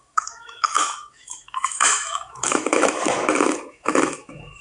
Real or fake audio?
fake